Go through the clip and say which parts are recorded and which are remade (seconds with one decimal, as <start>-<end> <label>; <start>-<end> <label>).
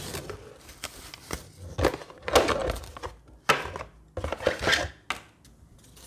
0.0-6.1 recorded